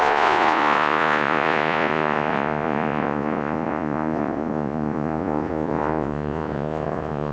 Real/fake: fake